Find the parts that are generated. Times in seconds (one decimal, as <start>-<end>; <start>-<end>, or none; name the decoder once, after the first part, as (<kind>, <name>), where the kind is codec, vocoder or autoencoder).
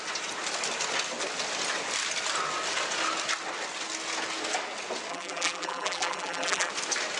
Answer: 5.1-6.7 (vocoder, BigVGAN v2)